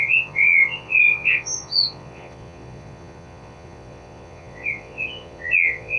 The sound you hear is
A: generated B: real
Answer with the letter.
A